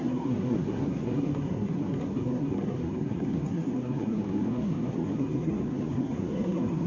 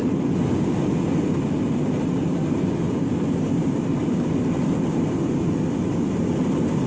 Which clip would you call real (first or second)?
second